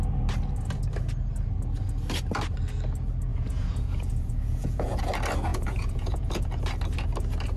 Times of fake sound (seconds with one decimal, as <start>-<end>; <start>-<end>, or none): 3.3-5.0; 5.5-6.6